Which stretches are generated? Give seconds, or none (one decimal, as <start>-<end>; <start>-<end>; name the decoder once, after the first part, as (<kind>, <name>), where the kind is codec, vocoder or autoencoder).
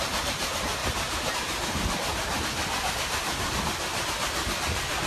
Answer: 0.0-5.1 (vocoder, BigVGAN v2)